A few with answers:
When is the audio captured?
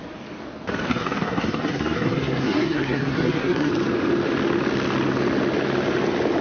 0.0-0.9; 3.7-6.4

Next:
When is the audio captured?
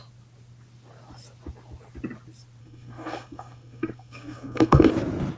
0.0-2.6; 4.9-5.4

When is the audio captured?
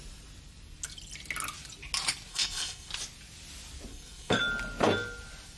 0.0-2.3; 2.9-3.9; 4.4-5.6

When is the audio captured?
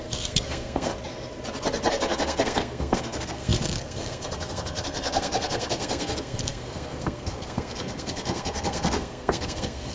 0.9-1.9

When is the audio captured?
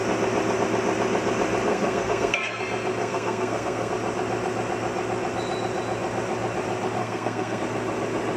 0.0-1.7; 2.6-3.0; 3.9-7.0; 7.6-8.4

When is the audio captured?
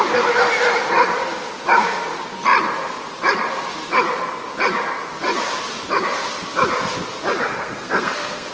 0.0-7.4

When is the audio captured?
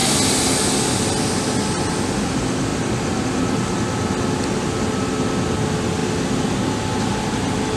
0.0-7.8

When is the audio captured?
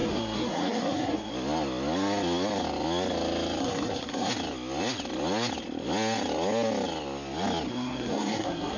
1.3-3.6; 4.3-7.7